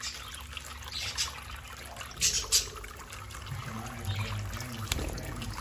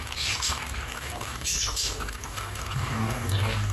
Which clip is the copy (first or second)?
second